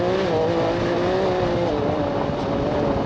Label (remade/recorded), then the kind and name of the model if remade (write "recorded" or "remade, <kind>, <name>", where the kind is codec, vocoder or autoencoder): recorded